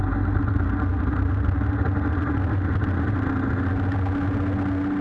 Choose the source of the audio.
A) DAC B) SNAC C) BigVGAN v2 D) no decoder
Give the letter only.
D